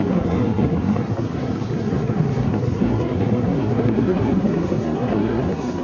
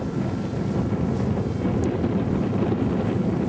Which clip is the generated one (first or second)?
first